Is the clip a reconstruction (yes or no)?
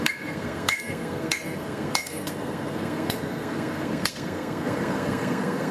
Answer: yes